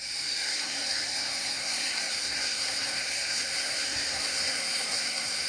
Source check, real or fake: fake